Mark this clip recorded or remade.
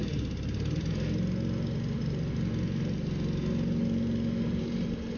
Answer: recorded